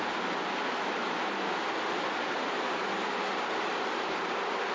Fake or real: real